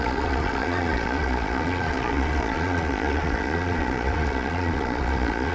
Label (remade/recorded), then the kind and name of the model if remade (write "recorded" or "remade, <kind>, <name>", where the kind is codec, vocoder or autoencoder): remade, vocoder, Vocos